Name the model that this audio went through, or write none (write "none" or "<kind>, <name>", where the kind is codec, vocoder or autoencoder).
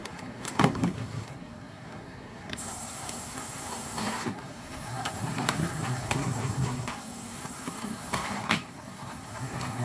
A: codec, SNAC